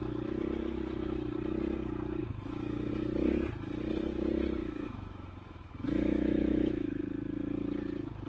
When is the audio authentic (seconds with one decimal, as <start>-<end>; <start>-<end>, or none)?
0.0-2.2; 2.9-4.6; 7.0-8.3